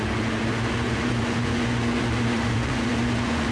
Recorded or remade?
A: remade